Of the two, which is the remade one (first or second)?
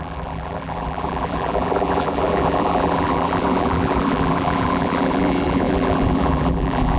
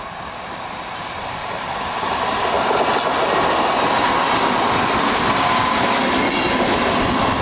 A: first